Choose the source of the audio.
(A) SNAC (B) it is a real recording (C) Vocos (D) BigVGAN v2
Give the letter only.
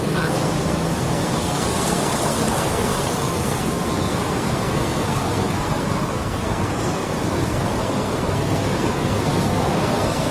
A